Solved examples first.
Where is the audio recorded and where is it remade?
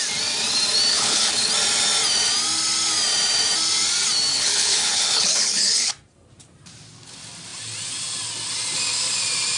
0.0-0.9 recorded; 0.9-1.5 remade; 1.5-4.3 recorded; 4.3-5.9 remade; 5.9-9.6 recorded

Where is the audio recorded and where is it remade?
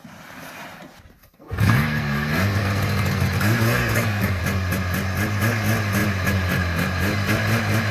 0.0-1.2 recorded; 1.2-4.4 remade; 4.4-7.9 recorded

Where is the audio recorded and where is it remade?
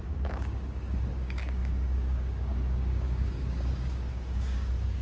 0.0-5.0 remade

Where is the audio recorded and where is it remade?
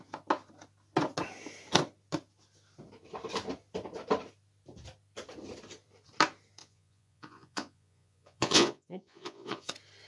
0.0-6.6 recorded; 6.6-9.7 remade; 9.7-10.1 recorded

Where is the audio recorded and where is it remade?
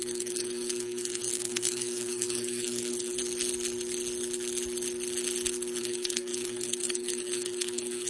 0.0-3.2 remade; 3.2-5.8 recorded; 5.8-8.1 remade